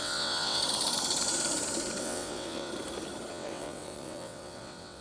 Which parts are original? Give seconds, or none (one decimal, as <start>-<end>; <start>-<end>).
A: 0.6-2.0; 2.7-3.3